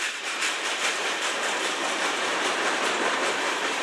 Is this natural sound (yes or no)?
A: no